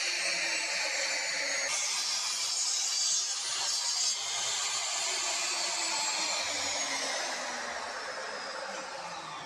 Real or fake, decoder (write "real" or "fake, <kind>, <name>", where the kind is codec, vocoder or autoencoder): real